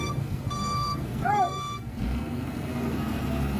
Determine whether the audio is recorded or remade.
remade